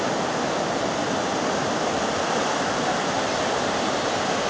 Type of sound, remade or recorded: recorded